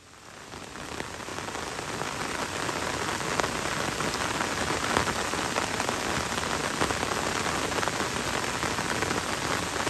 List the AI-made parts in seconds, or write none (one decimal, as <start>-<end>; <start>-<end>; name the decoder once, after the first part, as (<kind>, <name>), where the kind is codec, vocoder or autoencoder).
none